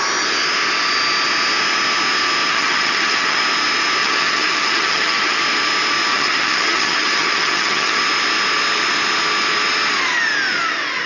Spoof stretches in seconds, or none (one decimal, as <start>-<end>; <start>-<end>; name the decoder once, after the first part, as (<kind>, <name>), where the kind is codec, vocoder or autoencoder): 2.5-3.4 (vocoder, HiFi-GAN); 4.0-5.4; 6.1-8.0